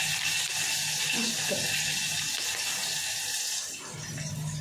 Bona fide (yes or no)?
yes